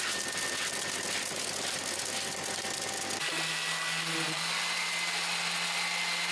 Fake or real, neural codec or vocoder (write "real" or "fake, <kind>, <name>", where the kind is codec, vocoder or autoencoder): real